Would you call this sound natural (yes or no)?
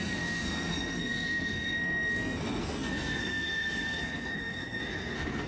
no